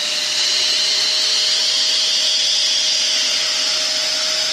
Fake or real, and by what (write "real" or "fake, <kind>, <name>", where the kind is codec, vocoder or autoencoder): real